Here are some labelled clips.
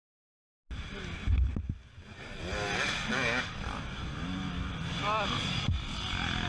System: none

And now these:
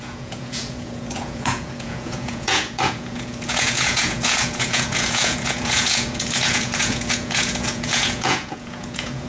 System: vocoder, Vocos